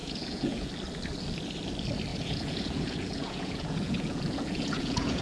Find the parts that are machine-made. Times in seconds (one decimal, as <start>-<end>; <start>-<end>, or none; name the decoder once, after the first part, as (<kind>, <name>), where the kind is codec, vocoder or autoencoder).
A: 0.0-0.7 (vocoder, Vocos); 2.1-5.2